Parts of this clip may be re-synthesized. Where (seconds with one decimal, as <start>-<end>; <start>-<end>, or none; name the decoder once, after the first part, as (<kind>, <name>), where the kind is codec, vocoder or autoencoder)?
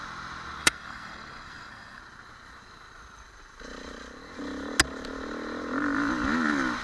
0.6-2.0 (codec, SNAC)